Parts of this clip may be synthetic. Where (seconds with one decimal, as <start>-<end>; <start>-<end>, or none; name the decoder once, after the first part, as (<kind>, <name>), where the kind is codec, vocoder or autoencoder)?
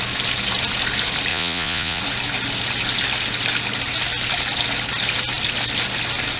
1.3-2.0 (vocoder, Vocos)